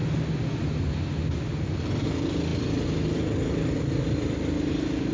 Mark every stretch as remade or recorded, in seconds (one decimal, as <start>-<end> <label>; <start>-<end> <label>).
0.0-5.1 recorded